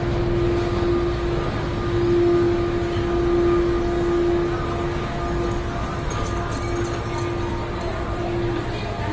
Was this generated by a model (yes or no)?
no